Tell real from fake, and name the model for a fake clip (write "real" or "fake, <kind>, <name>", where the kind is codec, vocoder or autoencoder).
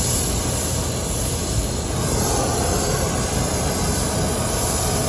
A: real